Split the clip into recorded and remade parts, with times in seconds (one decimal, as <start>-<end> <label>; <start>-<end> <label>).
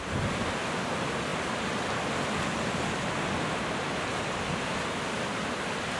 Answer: 0.0-6.0 recorded